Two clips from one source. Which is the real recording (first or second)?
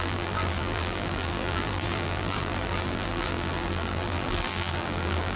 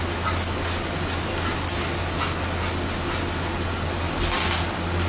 second